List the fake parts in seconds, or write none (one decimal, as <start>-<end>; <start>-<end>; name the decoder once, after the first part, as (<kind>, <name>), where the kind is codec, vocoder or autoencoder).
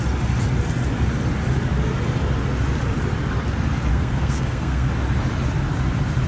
3.9-4.9 (codec, SNAC)